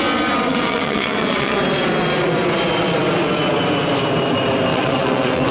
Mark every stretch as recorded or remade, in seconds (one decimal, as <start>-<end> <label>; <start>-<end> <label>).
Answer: 0.0-0.5 recorded; 0.5-1.6 remade; 1.6-4.7 recorded; 4.7-5.5 remade

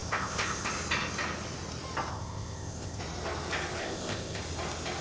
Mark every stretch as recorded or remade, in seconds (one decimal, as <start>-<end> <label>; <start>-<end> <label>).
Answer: 0.0-0.7 remade; 0.7-2.1 recorded; 2.1-3.0 remade; 3.0-3.8 recorded; 3.8-4.4 remade; 4.4-5.0 recorded

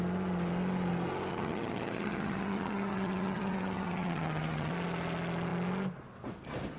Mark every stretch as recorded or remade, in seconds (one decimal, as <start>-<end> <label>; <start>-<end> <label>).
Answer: 0.0-1.3 recorded; 1.3-4.7 remade; 4.7-6.8 recorded

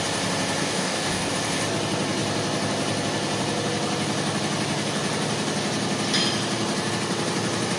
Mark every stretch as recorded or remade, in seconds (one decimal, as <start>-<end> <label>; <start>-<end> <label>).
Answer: 0.0-0.6 recorded; 0.6-1.3 remade; 1.3-7.8 recorded

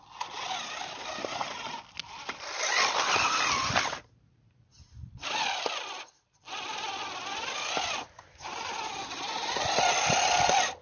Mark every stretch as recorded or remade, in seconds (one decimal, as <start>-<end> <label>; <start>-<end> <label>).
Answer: 0.0-10.8 recorded

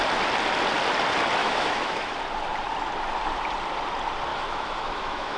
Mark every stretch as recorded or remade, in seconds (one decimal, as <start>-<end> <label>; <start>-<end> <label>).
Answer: 0.0-1.4 recorded; 1.4-2.1 remade; 2.1-4.3 recorded; 4.3-5.4 remade